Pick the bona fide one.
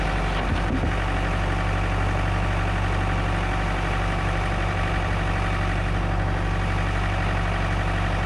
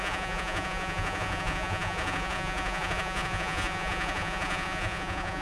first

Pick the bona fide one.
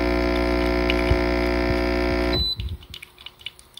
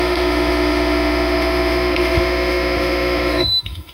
first